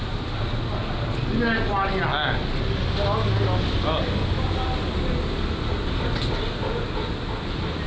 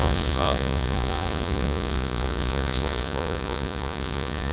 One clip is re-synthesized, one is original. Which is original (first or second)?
first